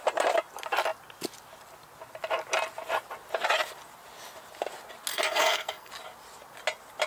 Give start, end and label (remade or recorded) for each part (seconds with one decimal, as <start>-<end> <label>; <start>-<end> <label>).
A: 0.0-5.1 recorded; 5.1-5.9 remade; 5.9-7.1 recorded